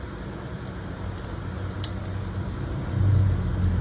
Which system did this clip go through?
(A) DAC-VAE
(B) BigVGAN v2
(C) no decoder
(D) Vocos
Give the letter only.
B